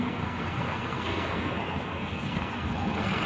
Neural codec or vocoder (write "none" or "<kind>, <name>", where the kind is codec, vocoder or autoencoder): codec, SNAC